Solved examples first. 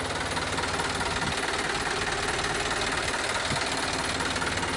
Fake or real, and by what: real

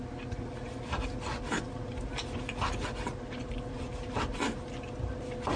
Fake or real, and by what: fake, vocoder, BigVGAN v2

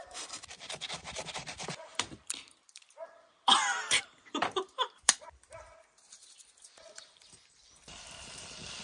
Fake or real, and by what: fake, vocoder, BigVGAN v2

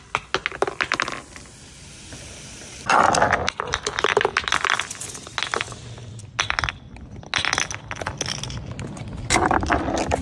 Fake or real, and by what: real